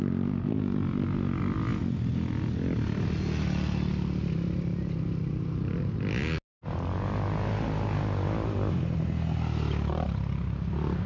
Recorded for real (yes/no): yes